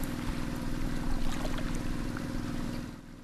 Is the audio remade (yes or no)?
yes